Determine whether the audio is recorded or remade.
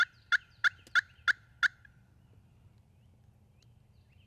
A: recorded